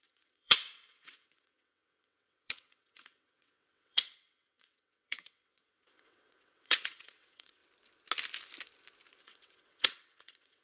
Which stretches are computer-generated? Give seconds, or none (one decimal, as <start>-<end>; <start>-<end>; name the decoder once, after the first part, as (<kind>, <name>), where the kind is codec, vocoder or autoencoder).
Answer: 0.0-7.6 (vocoder, WaveNeXt); 9.2-10.6